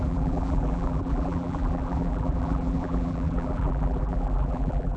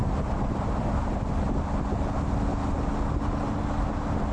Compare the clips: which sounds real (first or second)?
second